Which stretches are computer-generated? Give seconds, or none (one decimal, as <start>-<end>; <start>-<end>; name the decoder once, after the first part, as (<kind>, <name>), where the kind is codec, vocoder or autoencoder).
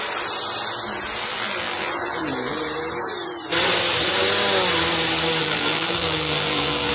1.3-2.6 (vocoder, BigVGAN v2); 5.4-6.9